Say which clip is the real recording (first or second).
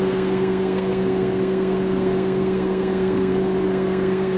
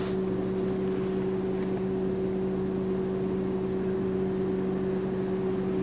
second